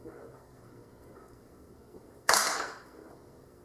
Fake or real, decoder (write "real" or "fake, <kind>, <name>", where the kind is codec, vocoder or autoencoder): fake, codec, SNAC